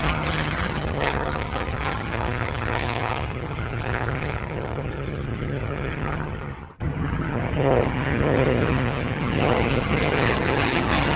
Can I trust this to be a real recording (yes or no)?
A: no